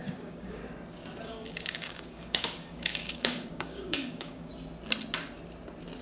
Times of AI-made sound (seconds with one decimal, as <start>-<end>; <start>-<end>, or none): 0.0-0.6; 1.2-4.5